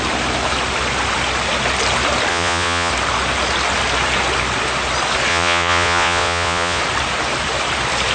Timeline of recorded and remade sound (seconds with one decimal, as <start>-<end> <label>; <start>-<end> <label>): 0.0-2.3 recorded; 2.3-2.9 remade; 2.9-5.3 recorded; 5.3-6.8 remade; 6.8-8.1 recorded